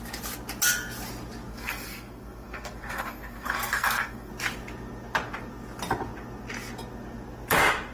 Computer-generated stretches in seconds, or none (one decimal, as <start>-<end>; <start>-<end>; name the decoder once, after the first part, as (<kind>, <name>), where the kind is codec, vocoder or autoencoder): 1.5-4.3 (codec, SNAC)